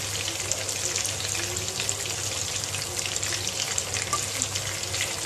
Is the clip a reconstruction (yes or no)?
no